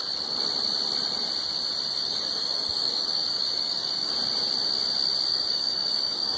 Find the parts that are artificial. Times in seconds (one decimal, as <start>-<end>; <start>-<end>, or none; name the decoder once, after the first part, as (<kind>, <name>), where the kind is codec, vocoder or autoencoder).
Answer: 2.0-4.1 (codec, DAC); 5.3-6.4